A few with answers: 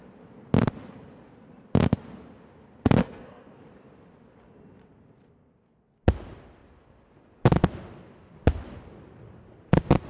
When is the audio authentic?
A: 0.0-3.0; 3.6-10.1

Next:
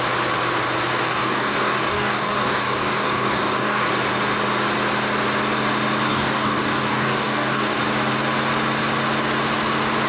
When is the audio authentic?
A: 0.0-0.9; 3.9-6.1; 7.8-10.1

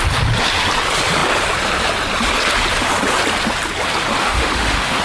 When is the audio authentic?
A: 0.0-4.2